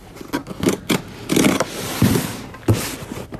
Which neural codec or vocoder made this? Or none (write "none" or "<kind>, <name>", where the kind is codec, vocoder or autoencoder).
none